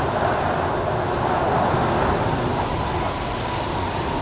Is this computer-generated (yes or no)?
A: no